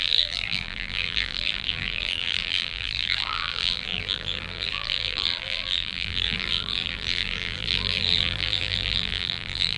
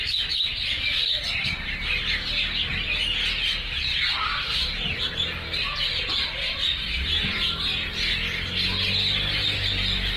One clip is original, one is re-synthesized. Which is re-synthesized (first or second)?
first